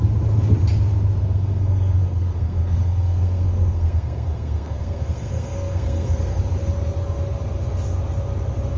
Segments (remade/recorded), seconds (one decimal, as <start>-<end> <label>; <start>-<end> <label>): 0.0-1.2 recorded; 1.2-6.4 remade; 6.4-8.8 recorded